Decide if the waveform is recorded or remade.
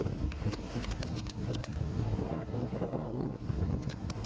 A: remade